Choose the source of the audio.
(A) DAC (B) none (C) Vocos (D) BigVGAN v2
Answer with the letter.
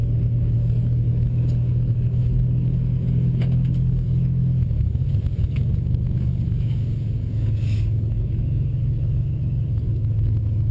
A